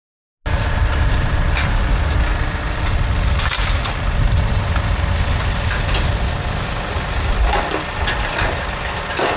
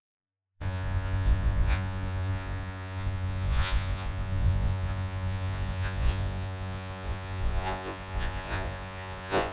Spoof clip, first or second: second